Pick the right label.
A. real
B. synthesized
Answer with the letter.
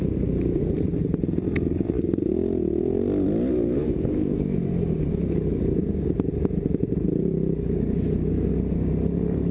A